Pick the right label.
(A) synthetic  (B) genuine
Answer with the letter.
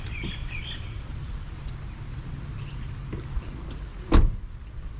B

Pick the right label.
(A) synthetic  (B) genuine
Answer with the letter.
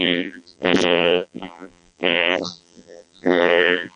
A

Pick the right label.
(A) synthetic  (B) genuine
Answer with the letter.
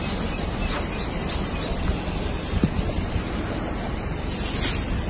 A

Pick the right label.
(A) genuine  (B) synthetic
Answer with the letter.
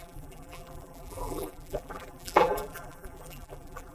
B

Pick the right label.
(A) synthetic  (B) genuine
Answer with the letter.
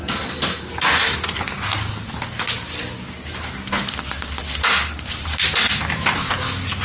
B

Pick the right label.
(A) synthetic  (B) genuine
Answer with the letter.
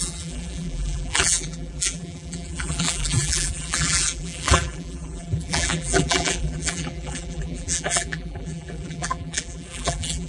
A